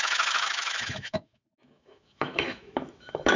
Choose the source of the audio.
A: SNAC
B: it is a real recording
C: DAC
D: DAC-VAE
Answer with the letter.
D